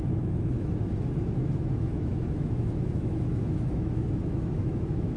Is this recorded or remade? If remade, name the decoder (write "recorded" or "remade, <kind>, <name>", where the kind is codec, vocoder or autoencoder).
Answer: remade, autoencoder, DAC-VAE